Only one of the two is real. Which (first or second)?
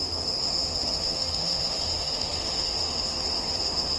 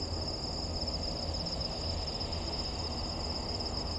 second